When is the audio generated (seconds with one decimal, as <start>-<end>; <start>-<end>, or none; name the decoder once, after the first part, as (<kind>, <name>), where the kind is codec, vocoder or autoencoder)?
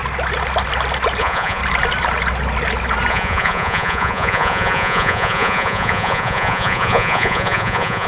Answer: 1.2-1.6 (vocoder, Vocos); 3.1-8.1